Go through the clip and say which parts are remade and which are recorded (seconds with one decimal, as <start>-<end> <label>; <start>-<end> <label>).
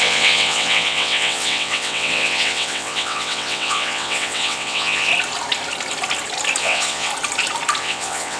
0.0-5.1 remade; 5.1-6.6 recorded; 6.6-7.1 remade; 7.1-7.8 recorded; 7.8-8.4 remade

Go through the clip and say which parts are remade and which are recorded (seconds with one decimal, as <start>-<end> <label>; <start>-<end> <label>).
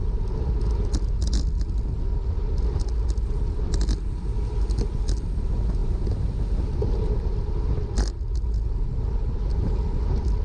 0.0-10.4 recorded